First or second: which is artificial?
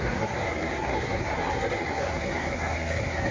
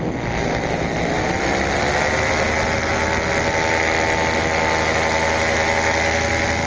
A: first